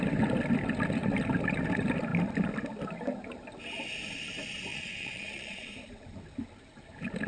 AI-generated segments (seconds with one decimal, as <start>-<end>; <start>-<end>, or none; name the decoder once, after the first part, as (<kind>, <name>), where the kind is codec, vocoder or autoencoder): 4.7-5.7 (vocoder, Vocos)